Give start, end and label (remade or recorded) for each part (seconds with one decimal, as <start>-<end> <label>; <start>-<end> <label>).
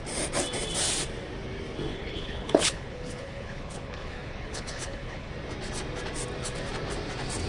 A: 0.0-1.9 recorded; 1.9-5.3 remade; 5.3-7.5 recorded